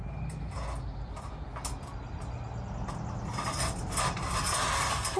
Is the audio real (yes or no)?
yes